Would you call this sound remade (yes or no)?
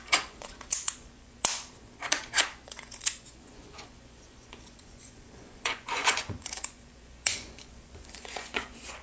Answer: yes